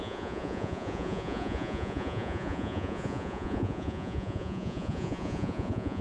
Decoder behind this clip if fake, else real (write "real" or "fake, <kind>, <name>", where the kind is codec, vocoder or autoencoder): fake, vocoder, Vocos